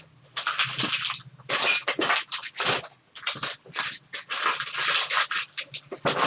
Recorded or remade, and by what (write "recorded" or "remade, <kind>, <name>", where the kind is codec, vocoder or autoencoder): recorded